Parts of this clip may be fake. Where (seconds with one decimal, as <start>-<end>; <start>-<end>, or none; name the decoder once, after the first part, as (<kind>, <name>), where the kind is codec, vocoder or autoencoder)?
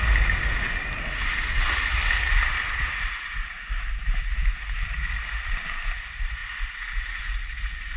none